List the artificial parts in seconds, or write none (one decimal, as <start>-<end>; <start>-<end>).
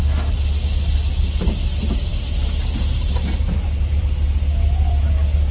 none